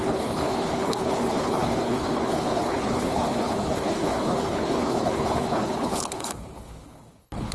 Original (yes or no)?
no